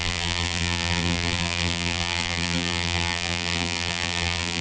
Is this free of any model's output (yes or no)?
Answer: no